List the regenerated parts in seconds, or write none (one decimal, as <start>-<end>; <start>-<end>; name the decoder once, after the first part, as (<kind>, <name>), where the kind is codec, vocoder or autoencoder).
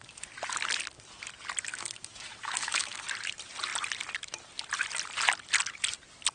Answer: 1.7-3.0 (autoencoder, DAC-VAE)